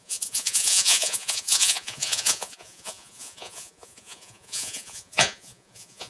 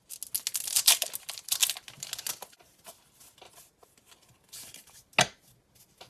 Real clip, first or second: second